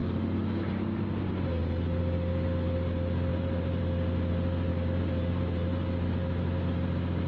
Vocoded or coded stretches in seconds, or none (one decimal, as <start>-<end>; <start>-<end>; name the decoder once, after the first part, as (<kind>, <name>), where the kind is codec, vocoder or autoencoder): 3.3-3.8 (vocoder, BigVGAN v2)